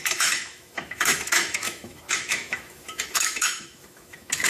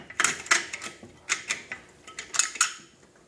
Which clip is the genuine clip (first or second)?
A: second